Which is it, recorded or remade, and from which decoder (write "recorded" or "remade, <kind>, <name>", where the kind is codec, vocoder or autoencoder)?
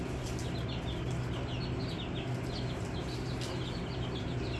recorded